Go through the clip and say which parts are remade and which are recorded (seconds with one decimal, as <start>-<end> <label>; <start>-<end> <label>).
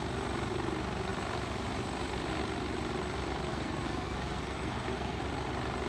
0.0-3.5 recorded; 3.5-5.2 remade; 5.2-5.9 recorded